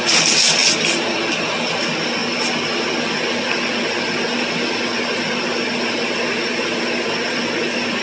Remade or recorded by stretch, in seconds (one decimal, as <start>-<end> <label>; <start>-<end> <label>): 0.0-8.0 recorded